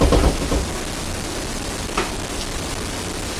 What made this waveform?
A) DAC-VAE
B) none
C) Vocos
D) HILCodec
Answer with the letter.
B